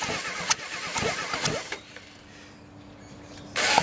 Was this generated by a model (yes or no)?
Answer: no